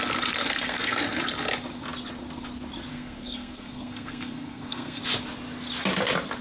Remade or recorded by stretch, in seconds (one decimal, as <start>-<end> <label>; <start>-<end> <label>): 0.0-0.4 recorded; 0.4-1.2 remade; 1.2-2.9 recorded; 2.9-5.0 remade; 5.0-6.4 recorded